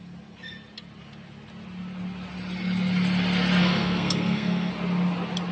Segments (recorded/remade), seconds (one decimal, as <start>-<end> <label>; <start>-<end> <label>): 0.0-3.6 recorded; 3.6-4.7 remade; 4.7-5.5 recorded